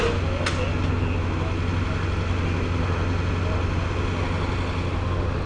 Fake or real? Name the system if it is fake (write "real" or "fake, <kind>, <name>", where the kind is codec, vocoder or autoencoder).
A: real